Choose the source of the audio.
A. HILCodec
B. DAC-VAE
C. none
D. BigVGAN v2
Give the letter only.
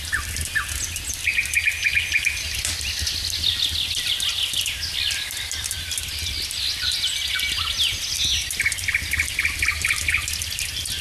C